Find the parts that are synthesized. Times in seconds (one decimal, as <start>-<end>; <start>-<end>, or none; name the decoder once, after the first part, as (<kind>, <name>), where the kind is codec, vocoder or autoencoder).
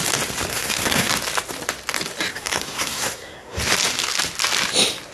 0.5-1.1 (codec, SNAC); 2.3-3.6